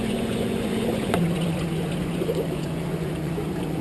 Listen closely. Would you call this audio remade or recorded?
remade